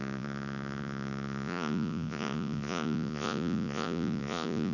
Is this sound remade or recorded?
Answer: remade